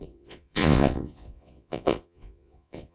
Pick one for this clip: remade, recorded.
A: remade